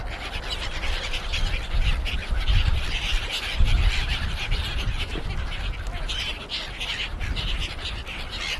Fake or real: real